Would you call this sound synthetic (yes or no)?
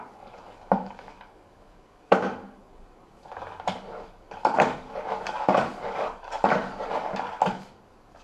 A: yes